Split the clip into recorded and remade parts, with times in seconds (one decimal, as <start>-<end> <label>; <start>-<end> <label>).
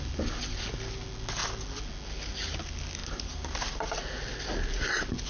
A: 0.0-3.0 recorded; 3.0-4.0 remade; 4.0-5.3 recorded